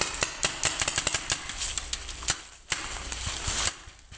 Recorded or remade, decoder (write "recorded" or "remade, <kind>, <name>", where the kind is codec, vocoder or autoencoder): recorded